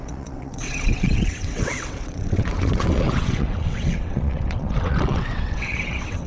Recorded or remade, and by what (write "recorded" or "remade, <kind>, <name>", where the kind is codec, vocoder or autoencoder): remade, vocoder, WaveNeXt